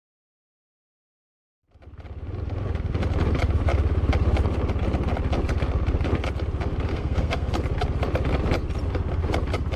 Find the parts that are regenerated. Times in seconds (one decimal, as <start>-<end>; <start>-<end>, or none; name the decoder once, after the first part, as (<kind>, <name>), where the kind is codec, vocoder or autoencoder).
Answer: 6.9-7.5 (codec, SNAC)